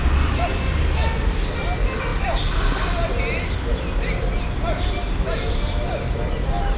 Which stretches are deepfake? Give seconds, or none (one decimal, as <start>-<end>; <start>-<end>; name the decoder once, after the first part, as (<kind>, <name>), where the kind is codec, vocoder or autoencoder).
none